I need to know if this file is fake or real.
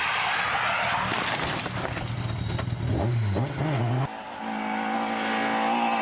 real